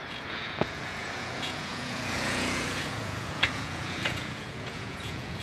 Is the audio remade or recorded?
remade